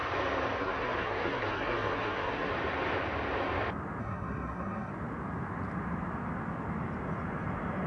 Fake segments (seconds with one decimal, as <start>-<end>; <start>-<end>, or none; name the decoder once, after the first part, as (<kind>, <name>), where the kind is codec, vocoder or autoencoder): 0.6-2.5 (codec, SNAC); 4.0-4.9

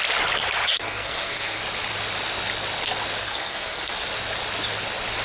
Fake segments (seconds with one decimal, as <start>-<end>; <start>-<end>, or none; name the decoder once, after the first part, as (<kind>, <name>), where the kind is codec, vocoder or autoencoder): 0.7-1.6 (codec, SNAC); 3.2-3.9

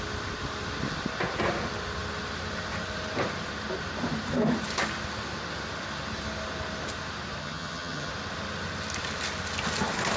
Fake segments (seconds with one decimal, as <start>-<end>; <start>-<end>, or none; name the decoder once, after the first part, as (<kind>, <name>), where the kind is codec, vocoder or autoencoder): 7.4-8.1 (vocoder, HiFi-GAN)

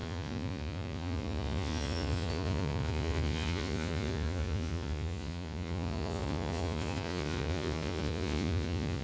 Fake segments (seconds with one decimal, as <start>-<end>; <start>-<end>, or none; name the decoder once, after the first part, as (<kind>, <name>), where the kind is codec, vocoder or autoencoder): 0.0-9.0 (vocoder, Vocos)